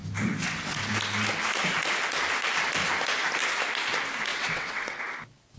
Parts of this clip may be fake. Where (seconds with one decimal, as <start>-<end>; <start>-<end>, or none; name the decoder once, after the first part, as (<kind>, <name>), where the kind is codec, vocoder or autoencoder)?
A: 4.3-5.0 (vocoder, WaveNeXt)